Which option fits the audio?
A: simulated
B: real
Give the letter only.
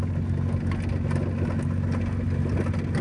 B